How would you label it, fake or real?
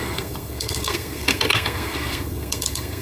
fake